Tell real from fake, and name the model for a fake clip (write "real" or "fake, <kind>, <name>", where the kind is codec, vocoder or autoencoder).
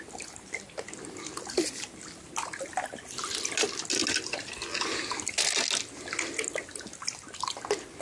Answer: real